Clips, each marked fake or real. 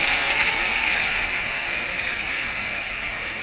fake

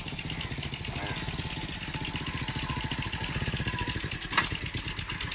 real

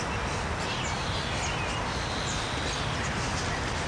real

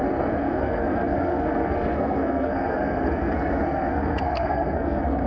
fake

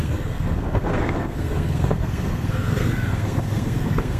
fake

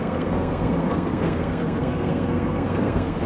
fake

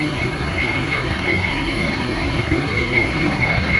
fake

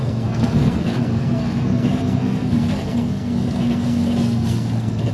fake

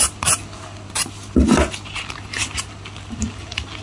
real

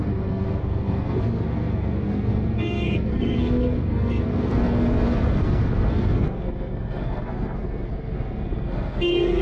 fake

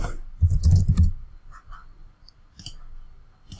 real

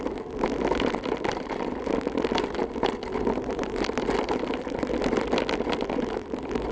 real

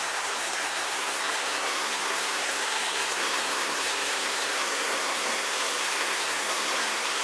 fake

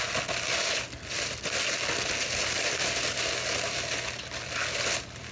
real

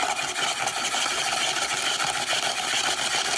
real